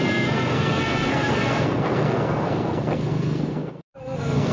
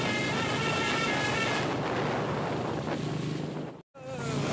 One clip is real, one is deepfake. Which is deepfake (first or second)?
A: first